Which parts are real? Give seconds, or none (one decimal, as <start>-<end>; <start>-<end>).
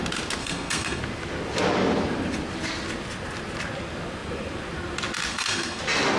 0.0-0.4; 1.0-5.3; 5.8-6.2